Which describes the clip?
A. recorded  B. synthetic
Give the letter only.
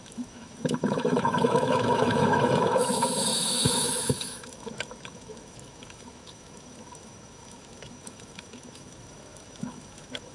B